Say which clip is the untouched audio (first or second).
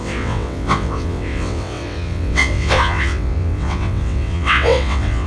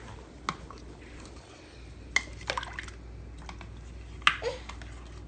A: second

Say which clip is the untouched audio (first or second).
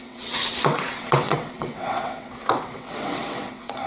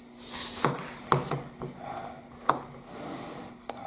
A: second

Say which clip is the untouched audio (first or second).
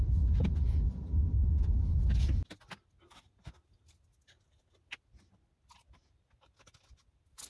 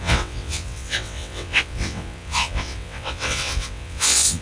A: first